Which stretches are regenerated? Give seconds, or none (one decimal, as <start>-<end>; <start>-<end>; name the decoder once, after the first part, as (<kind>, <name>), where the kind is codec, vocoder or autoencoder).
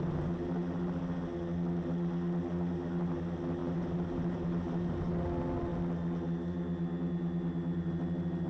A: 3.6-5.2 (vocoder, BigVGAN v2)